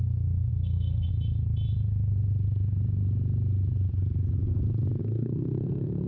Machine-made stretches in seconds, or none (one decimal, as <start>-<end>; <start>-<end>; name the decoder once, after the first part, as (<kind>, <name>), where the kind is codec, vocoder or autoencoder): 0.5-1.1 (codec, SNAC); 5.0-6.1